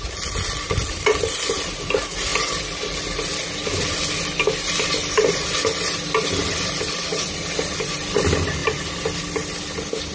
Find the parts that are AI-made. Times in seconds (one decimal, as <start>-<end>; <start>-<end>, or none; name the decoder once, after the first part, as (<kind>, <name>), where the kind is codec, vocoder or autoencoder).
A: none